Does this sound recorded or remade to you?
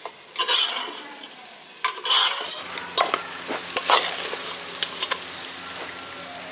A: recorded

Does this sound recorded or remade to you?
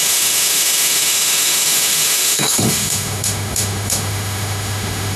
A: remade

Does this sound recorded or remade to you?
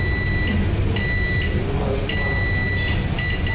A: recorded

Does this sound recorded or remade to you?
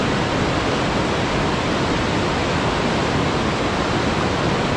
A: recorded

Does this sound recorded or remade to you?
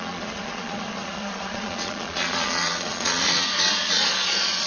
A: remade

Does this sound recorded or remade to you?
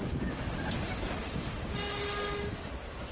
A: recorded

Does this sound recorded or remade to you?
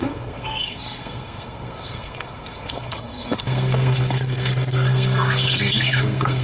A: remade